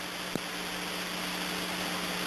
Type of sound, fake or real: real